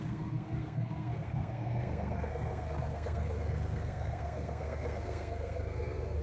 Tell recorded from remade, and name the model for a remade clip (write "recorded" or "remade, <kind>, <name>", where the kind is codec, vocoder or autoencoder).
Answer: remade, codec, SNAC